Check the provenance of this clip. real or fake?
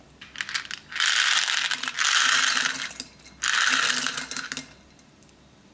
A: real